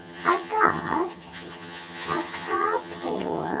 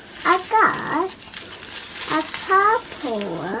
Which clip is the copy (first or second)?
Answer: first